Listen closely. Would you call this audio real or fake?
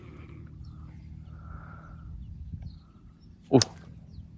real